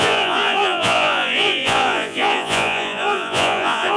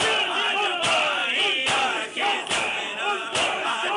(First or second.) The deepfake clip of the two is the first